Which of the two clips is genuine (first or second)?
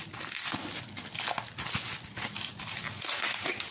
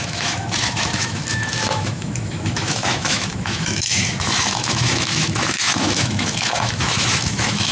first